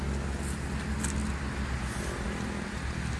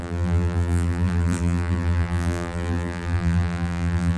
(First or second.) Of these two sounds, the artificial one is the second